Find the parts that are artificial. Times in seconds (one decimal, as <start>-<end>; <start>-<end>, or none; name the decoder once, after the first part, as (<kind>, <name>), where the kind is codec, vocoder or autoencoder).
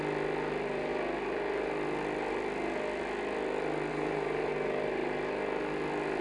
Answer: 3.9-4.5 (vocoder, BigVGAN v2)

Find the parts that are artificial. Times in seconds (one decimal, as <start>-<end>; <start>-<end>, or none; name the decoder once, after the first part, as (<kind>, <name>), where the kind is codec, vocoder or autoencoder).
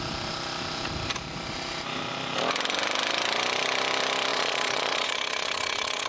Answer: 4.3-6.1 (vocoder, Vocos)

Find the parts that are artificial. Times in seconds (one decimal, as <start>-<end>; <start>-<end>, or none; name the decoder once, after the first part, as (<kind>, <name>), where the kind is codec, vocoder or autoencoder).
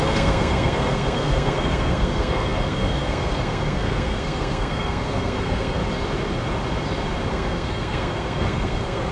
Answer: 0.0-5.8 (codec, SNAC); 7.3-9.1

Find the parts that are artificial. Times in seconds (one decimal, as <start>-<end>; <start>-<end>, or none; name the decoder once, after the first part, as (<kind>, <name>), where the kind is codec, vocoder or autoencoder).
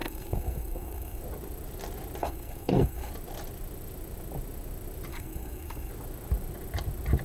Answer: 0.0-1.2 (codec, SNAC); 2.2-3.1; 5.1-5.9